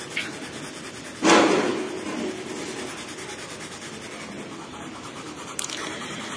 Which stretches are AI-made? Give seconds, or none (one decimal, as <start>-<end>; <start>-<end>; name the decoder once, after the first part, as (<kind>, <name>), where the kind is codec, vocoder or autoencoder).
1.7-2.2 (vocoder, BigVGAN v2); 4.7-6.0

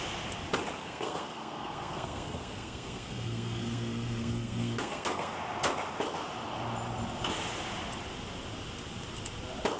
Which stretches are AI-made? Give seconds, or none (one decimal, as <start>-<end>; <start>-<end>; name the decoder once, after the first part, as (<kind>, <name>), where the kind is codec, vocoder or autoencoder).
0.8-5.3 (codec, SNAC)

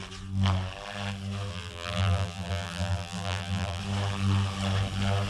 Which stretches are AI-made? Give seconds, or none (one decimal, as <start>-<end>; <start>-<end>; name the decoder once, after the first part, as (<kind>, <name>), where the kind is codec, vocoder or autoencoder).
1.5-3.8 (vocoder, BigVGAN v2)

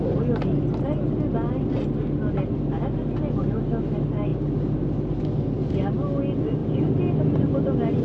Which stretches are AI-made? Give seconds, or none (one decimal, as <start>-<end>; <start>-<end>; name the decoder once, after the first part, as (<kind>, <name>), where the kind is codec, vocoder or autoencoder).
none

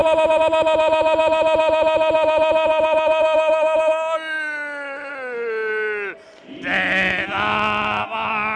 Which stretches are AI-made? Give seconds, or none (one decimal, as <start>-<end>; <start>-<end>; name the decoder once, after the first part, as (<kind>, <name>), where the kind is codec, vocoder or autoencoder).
none

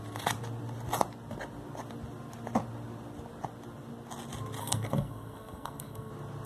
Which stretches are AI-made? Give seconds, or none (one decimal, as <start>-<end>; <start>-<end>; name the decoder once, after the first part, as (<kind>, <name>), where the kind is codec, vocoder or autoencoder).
4.6-6.1 (codec, SNAC)

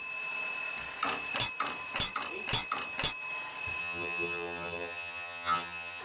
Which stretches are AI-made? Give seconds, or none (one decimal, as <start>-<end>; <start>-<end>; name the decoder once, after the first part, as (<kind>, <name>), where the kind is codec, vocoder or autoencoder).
3.8-6.0 (vocoder, HiFi-GAN)